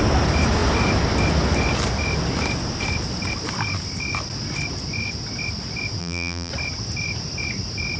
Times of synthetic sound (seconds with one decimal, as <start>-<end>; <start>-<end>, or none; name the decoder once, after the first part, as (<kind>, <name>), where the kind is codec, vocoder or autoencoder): 6.0-6.5 (vocoder, BigVGAN v2)